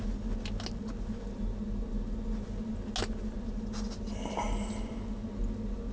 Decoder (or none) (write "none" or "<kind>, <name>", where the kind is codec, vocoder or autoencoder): none